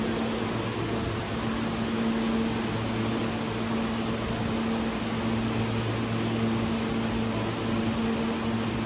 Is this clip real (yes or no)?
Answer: yes